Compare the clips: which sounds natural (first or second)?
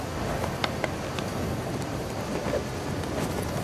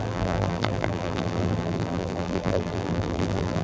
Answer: first